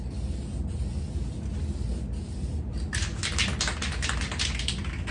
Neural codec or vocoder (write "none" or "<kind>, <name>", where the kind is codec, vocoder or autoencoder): none